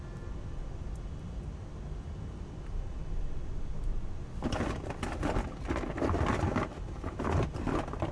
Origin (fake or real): real